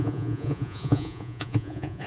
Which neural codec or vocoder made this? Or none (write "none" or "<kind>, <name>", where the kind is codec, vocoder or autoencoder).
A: vocoder, Vocos